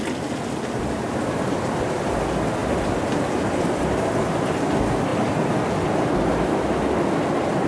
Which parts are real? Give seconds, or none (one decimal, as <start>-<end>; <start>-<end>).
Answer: 0.0-7.7